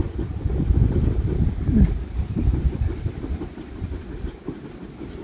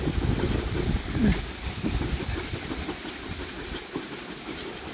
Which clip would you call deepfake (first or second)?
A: first